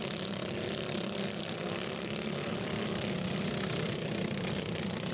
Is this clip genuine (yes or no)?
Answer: no